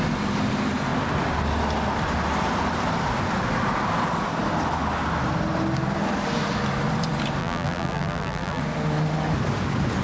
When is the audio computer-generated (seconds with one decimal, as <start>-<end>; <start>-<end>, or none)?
7.4-8.6